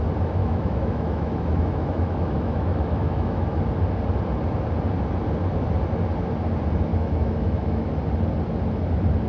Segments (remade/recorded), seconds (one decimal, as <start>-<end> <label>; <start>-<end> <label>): 0.0-0.4 recorded; 0.4-3.6 remade; 3.6-6.9 recorded; 6.9-8.0 remade; 8.0-9.3 recorded

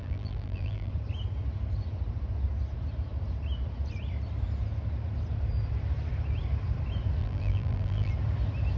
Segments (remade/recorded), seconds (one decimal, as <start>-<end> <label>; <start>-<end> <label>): 0.0-0.9 remade; 0.9-7.2 recorded; 7.2-8.1 remade; 8.1-8.8 recorded